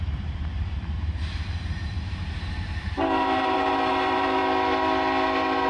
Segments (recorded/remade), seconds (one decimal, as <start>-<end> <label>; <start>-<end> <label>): 0.0-4.4 remade; 4.4-5.7 recorded